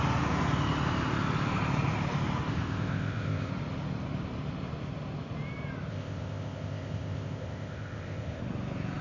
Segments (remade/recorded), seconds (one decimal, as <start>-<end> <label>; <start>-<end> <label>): 0.0-2.5 recorded; 2.5-3.5 remade; 3.5-5.9 recorded; 5.9-8.4 remade; 8.4-9.0 recorded